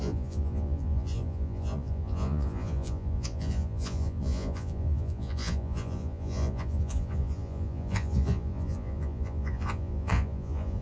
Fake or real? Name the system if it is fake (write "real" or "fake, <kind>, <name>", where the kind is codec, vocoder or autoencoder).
fake, vocoder, Vocos